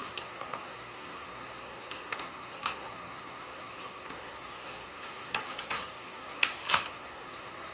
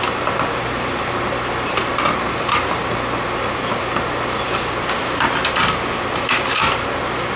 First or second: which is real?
second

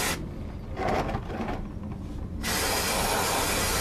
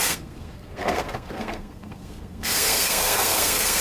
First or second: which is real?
first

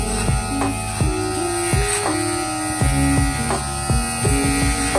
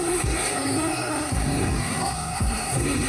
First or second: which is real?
first